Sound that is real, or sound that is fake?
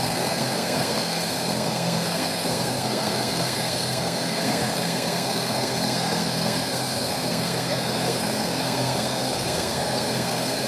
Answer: fake